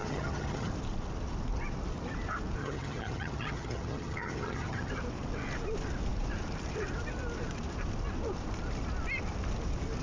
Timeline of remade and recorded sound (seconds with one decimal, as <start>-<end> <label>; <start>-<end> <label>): 0.0-0.7 remade; 0.7-2.6 recorded; 2.6-4.9 remade; 4.9-10.0 recorded